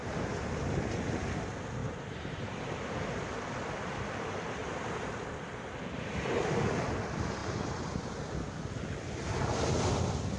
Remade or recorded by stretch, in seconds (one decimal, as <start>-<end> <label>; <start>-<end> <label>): 0.0-1.8 recorded; 1.8-2.5 remade; 2.5-4.6 recorded; 4.6-5.4 remade; 5.4-7.4 recorded; 7.4-8.0 remade; 8.0-10.4 recorded

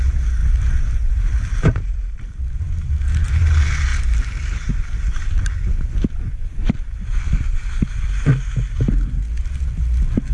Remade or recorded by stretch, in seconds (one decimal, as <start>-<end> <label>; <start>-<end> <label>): 0.0-0.4 recorded; 0.4-2.4 remade; 2.4-10.3 recorded

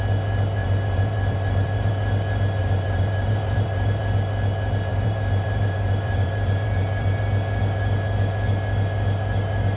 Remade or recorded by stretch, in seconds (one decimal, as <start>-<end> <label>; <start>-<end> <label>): 0.0-0.6 recorded; 0.6-1.9 remade; 1.9-2.6 recorded; 2.6-4.0 remade; 4.0-4.9 recorded; 4.9-7.2 remade; 7.2-9.8 recorded

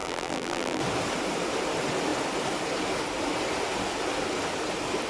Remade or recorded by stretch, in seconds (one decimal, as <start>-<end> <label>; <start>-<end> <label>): 0.0-0.8 remade; 0.8-5.1 recorded

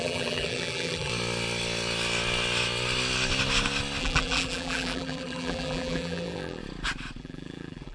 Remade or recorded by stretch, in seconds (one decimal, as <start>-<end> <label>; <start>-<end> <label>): 0.0-1.1 remade; 1.1-4.0 recorded; 4.0-6.6 remade; 6.6-7.2 recorded; 7.2-7.9 remade

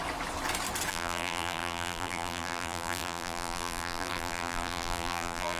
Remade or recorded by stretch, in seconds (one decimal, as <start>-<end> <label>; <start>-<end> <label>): 0.0-0.9 recorded; 0.9-5.6 remade

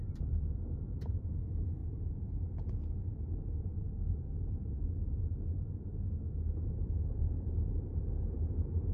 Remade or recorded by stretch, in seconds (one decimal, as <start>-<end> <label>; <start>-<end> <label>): 0.0-5.9 remade; 5.9-6.8 recorded; 6.8-8.9 remade